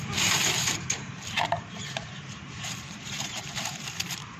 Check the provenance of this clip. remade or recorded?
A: remade